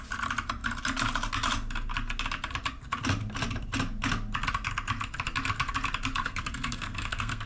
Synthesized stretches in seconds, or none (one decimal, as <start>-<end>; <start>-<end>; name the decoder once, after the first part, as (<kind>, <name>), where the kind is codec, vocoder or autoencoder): 6.2-7.5 (codec, SNAC)